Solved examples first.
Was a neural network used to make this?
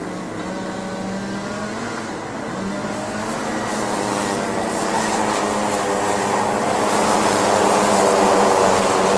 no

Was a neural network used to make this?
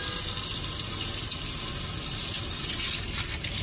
no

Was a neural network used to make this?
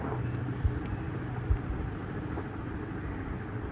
no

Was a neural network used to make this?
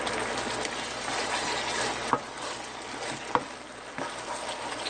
no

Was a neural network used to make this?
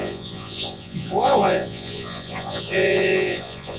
yes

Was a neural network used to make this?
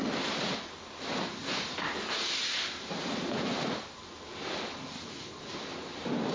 no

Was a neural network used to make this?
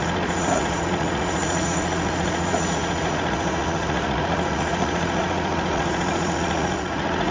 yes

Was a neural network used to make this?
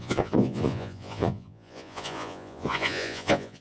yes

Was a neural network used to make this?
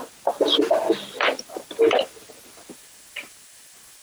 no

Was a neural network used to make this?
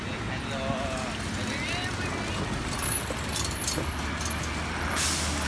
no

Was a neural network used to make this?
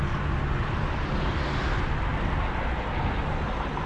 no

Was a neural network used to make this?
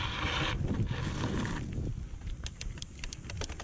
no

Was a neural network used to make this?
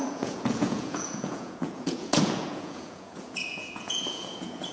yes